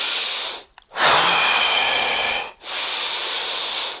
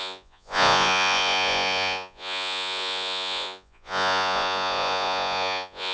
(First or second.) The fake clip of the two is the second